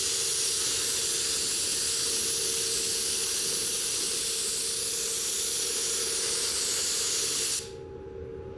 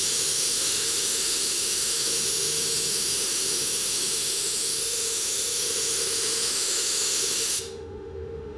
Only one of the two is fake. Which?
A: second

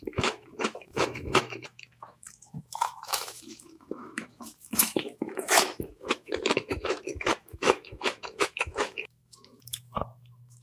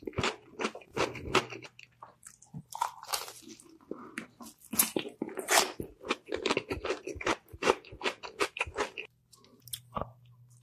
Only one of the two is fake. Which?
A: first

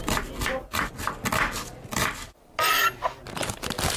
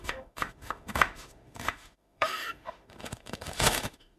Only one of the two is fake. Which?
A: second